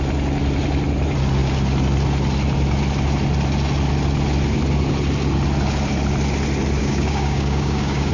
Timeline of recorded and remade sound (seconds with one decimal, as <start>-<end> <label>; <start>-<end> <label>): 0.0-6.8 recorded; 6.8-8.1 remade